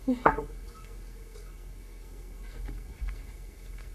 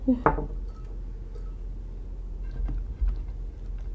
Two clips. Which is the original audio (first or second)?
second